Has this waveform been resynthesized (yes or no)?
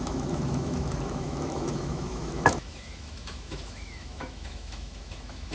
yes